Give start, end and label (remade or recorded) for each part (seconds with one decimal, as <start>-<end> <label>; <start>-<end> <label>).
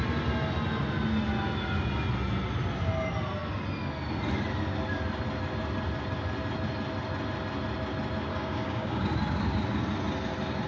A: 0.0-8.3 recorded; 8.3-9.1 remade; 9.1-10.7 recorded